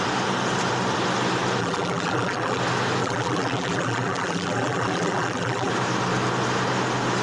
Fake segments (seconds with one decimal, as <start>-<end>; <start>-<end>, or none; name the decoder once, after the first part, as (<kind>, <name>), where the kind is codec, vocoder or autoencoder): 1.6-2.6 (vocoder, BigVGAN v2); 3.0-5.7